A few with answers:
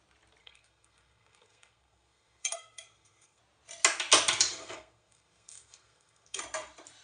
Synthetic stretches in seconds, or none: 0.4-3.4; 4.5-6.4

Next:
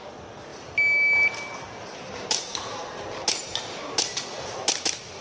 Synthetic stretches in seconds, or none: none